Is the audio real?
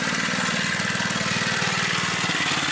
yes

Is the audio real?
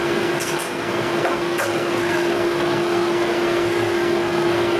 no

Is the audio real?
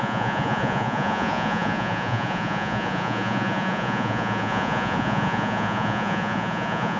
no